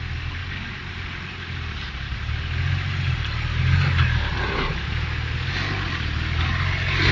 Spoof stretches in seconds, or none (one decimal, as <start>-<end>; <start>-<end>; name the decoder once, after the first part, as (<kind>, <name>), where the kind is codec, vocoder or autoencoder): none